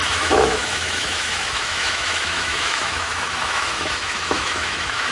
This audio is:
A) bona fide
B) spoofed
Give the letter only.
B